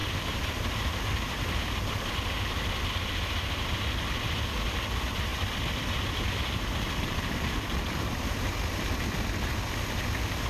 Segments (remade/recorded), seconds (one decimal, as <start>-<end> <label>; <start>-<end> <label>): 0.0-2.1 remade; 2.1-10.5 recorded